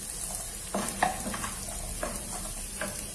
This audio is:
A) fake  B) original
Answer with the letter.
B